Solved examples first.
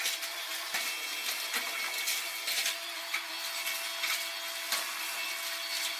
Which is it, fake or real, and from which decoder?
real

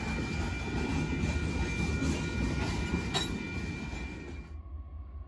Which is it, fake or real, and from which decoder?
real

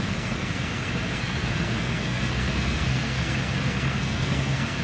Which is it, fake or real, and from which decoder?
fake, codec, SNAC